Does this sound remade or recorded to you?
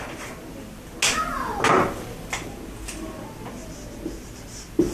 recorded